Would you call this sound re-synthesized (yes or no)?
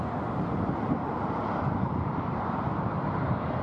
no